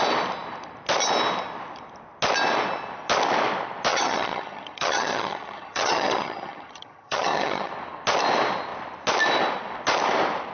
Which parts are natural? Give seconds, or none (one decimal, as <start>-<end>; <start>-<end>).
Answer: 0.0-3.9; 7.7-10.5